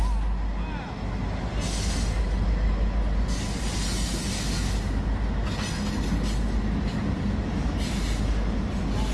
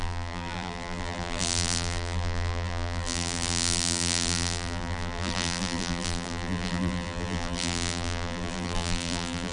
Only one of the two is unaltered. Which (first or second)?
first